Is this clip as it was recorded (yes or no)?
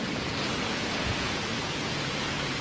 no